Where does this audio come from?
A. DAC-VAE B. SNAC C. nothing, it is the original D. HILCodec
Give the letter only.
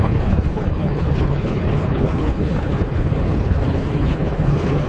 D